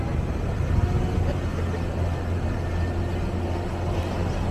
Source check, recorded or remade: recorded